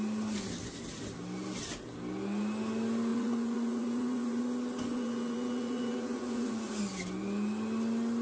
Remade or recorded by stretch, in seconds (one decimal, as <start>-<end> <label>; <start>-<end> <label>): 0.0-3.1 recorded; 3.1-4.4 remade; 4.4-4.9 recorded; 4.9-6.7 remade; 6.7-8.2 recorded